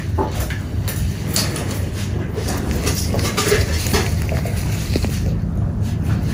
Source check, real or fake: real